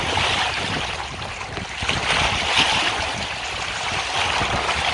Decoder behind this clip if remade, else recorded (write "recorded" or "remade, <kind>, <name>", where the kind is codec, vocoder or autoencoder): recorded